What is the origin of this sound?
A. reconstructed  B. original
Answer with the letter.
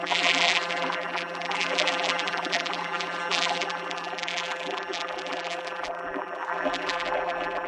A